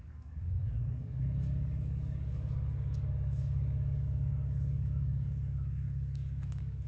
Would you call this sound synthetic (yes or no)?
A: yes